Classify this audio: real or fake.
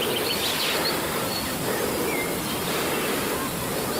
real